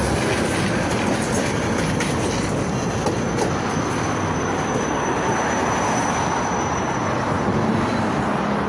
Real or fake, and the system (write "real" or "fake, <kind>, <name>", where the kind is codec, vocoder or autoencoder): real